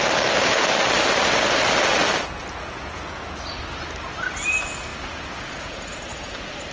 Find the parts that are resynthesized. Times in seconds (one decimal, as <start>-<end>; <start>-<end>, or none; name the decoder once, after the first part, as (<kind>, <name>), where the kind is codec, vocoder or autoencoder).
2.4-3.6 (vocoder, Vocos); 4.9-6.3